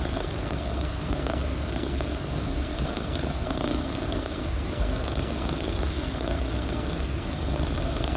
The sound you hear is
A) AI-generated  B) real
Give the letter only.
A